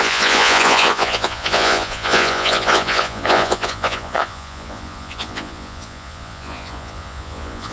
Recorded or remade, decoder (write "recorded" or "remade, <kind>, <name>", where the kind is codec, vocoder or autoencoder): remade, vocoder, Vocos